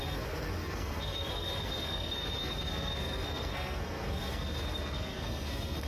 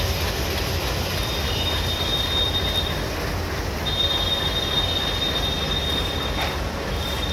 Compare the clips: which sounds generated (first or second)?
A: first